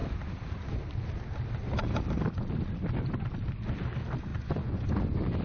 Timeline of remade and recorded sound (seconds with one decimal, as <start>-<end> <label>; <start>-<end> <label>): 0.0-4.3 recorded; 4.3-5.0 remade; 5.0-5.4 recorded